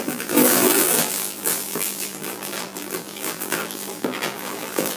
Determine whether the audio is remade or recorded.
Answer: remade